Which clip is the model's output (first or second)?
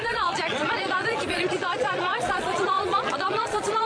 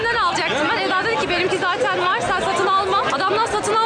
first